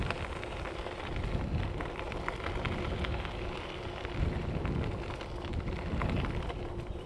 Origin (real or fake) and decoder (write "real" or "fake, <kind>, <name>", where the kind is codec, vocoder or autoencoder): real